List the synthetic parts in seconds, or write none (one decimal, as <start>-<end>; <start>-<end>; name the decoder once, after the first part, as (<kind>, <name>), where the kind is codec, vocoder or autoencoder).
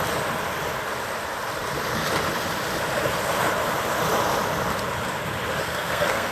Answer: 5.6-6.3 (codec, SNAC)